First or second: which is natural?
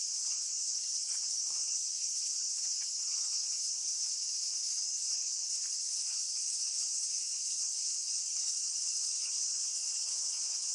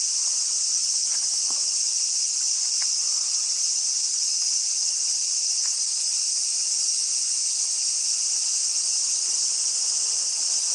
second